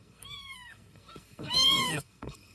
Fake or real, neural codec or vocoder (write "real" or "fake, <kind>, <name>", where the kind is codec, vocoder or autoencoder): fake, codec, SNAC